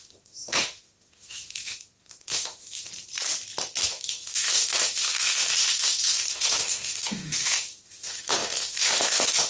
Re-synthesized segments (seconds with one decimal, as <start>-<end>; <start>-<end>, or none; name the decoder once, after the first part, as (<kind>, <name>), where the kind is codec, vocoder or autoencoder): 0.0-2.9 (autoencoder, DAC-VAE); 3.9-9.5